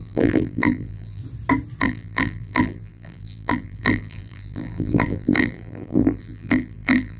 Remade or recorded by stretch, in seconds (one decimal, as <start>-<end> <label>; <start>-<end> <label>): 0.0-1.2 remade; 1.2-1.8 recorded; 1.8-7.2 remade